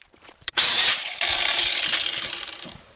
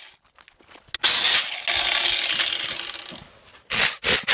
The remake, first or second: first